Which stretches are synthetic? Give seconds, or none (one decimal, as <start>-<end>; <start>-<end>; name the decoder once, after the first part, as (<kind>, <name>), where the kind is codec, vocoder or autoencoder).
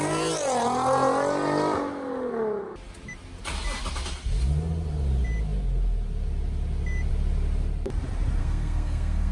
8.4-9.3 (codec, SNAC)